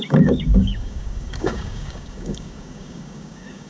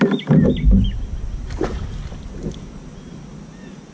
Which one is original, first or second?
second